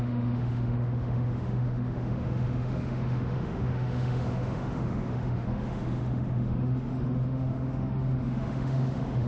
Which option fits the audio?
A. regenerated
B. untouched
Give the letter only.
A